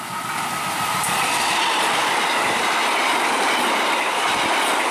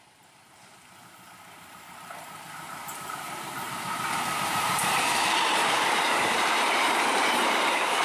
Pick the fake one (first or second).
second